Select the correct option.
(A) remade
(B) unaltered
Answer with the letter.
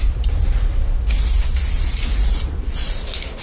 B